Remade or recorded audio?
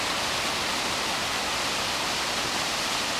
recorded